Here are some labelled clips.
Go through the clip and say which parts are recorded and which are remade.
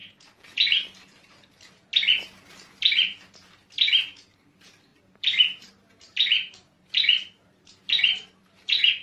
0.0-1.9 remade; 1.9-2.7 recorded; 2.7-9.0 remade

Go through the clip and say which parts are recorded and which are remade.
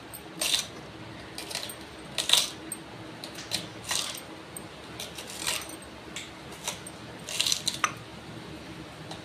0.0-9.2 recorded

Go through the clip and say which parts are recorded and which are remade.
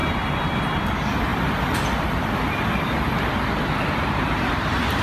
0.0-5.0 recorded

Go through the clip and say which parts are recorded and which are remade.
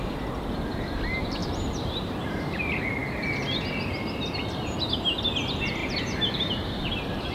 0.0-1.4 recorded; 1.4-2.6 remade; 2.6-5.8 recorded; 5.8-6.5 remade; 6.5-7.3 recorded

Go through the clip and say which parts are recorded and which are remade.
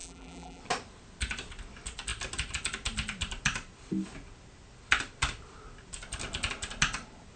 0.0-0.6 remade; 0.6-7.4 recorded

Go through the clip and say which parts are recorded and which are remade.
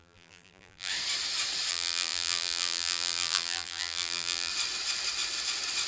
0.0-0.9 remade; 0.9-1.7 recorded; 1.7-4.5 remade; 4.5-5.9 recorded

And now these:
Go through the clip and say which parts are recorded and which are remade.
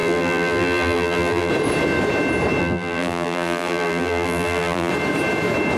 0.0-1.5 remade; 1.5-2.6 recorded; 2.6-4.9 remade; 4.9-5.8 recorded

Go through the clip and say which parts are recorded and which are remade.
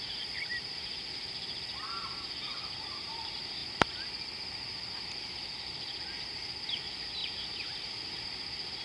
0.0-7.2 recorded; 7.2-7.8 remade; 7.8-8.8 recorded